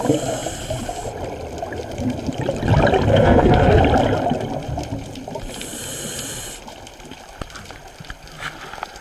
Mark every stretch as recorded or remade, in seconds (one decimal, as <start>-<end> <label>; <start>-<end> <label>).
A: 0.0-3.1 recorded; 3.1-3.8 remade; 3.8-9.0 recorded